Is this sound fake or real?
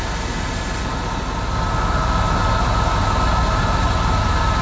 real